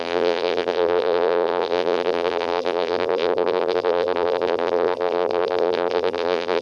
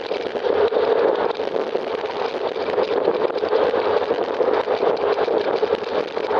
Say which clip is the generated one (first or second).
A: first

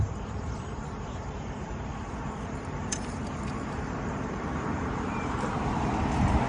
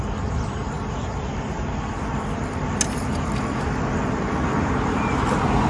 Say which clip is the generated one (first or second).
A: first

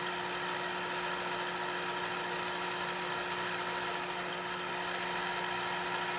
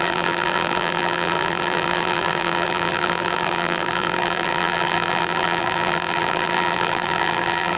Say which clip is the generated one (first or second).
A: second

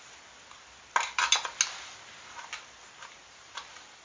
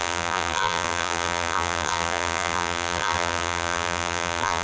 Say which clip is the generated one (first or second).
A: second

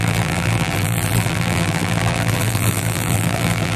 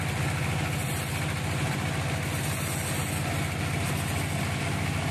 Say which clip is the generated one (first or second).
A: first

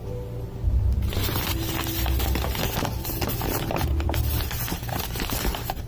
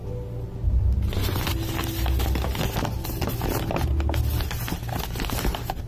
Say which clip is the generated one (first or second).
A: first